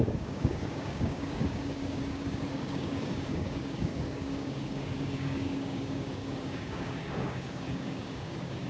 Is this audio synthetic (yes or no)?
yes